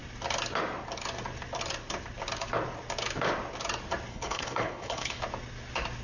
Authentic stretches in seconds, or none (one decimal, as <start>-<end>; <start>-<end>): 0.0-4.1; 5.2-6.0